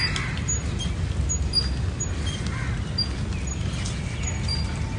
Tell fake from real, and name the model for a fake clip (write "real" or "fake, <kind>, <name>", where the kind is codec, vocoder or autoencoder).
real